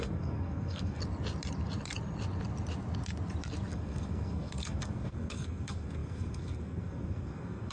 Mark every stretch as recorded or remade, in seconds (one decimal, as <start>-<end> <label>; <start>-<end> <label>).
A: 0.0-1.0 remade; 1.0-3.7 recorded; 3.7-7.7 remade